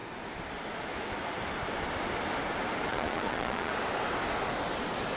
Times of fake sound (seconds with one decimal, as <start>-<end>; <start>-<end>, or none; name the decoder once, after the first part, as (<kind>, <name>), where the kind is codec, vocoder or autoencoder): 2.9-3.7 (vocoder, Vocos)